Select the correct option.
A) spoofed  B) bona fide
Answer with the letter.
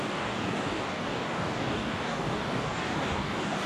A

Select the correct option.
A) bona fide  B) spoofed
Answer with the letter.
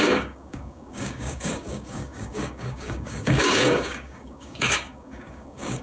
B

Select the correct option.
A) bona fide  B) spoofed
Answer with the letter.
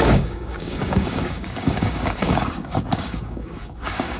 B